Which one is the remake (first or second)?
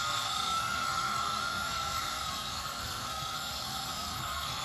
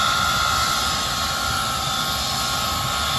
first